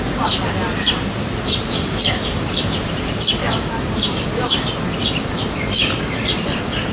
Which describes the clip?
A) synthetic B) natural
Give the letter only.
B